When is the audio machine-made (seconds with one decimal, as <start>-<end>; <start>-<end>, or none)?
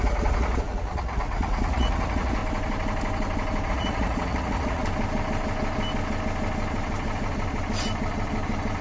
0.0-2.4; 3.7-4.8